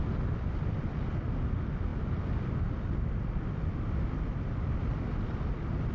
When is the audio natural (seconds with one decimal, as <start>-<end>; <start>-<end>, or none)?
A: 0.0-5.9